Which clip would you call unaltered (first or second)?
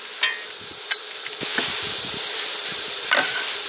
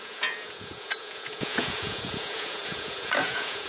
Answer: first